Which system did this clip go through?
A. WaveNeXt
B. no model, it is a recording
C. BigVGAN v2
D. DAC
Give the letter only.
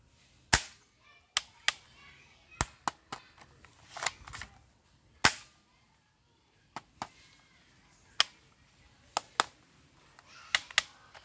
B